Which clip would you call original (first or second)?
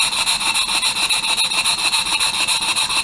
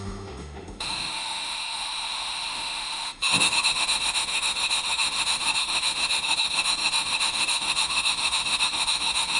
first